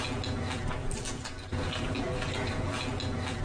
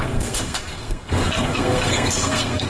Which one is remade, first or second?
second